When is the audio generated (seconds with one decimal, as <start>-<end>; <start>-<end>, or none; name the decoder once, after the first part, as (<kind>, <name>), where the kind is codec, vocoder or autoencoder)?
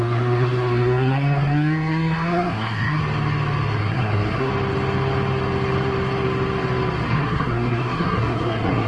0.0-3.0 (codec, SNAC); 3.8-4.5; 7.1-8.9